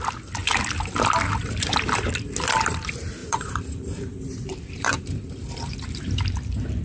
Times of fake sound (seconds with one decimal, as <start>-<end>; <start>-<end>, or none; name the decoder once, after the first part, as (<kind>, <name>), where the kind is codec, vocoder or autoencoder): 3.2-6.8 (vocoder, BigVGAN v2)